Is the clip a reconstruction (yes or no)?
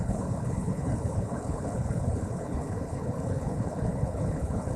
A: yes